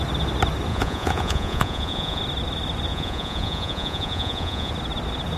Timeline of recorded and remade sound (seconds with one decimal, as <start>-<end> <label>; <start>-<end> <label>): 0.0-0.7 recorded; 0.7-2.2 remade; 2.2-2.9 recorded; 2.9-4.7 remade; 4.7-5.4 recorded